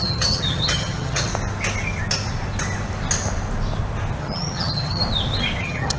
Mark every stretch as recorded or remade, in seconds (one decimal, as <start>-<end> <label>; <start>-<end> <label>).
0.0-1.3 remade; 1.3-4.2 recorded; 4.2-5.0 remade; 5.0-5.6 recorded; 5.6-6.0 remade